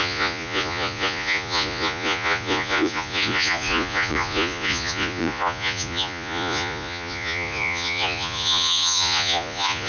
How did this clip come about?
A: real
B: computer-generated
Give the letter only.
B